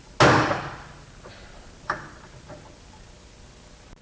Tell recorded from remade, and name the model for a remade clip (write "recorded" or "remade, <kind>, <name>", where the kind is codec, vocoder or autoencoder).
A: recorded